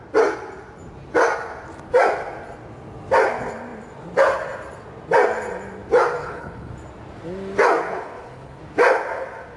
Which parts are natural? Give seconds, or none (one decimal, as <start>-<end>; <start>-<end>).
0.0-6.2; 6.7-7.9; 8.6-9.6